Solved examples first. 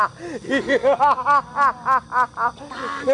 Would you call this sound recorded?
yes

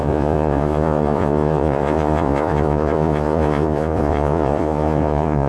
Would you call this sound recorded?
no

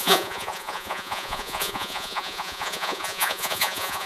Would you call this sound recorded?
no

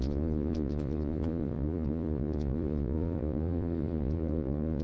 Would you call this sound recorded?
no